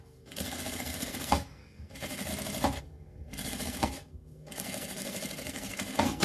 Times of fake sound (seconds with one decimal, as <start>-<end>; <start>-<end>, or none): 0.0-2.3; 2.8-6.2